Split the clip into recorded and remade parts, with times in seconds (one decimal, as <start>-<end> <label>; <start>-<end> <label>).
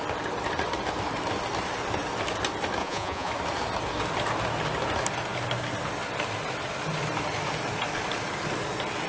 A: 0.0-2.8 recorded; 2.8-3.3 remade; 3.3-9.1 recorded